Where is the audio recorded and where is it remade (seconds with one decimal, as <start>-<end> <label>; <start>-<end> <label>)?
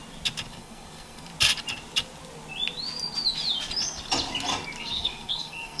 0.0-0.5 recorded; 0.5-1.3 remade; 1.3-4.8 recorded; 4.8-5.8 remade